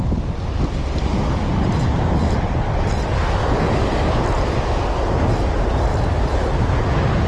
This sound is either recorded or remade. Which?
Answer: recorded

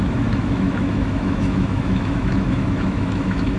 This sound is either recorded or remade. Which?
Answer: remade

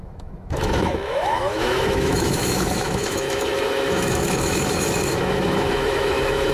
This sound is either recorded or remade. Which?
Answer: remade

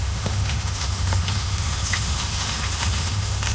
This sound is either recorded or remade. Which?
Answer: remade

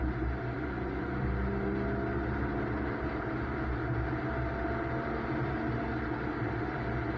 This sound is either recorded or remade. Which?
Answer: recorded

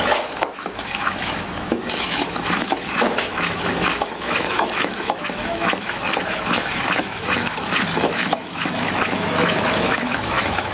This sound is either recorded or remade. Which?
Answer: remade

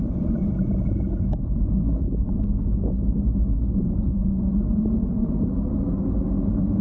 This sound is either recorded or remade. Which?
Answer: recorded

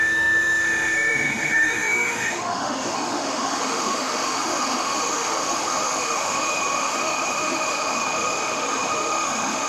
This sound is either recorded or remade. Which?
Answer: remade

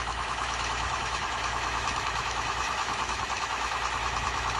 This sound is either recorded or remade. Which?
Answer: remade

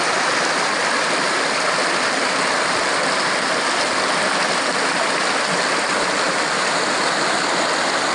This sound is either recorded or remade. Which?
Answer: recorded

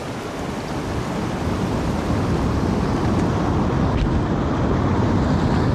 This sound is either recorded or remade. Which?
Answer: recorded